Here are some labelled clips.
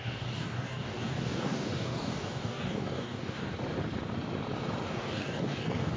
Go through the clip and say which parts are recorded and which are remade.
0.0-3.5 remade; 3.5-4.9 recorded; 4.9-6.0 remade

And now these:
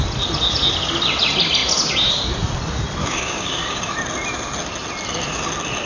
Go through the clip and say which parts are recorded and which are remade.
0.0-3.0 recorded; 3.0-3.9 remade; 3.9-5.9 recorded